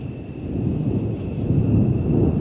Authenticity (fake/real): fake